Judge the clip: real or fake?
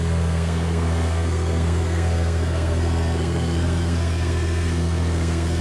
fake